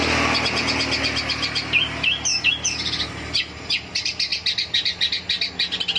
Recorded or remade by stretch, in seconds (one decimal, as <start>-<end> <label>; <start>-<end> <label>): 0.0-6.0 recorded